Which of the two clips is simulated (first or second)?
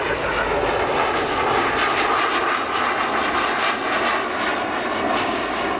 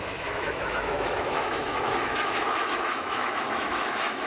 second